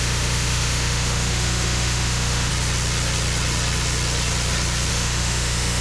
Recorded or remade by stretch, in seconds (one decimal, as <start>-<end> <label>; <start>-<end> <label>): 0.0-2.5 remade; 2.5-4.9 recorded; 4.9-5.8 remade